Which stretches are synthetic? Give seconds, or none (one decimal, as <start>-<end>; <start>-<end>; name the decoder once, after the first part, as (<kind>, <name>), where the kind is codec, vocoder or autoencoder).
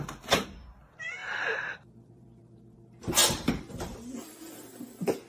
1.2-2.4 (vocoder, BigVGAN v2)